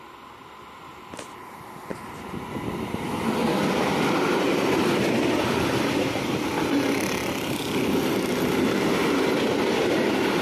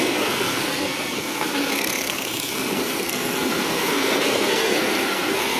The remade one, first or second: second